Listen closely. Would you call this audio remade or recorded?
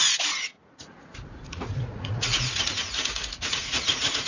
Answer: remade